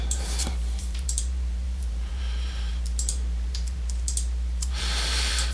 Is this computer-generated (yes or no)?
yes